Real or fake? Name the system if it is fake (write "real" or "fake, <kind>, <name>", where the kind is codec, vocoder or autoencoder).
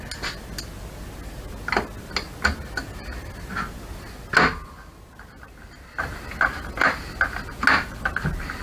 real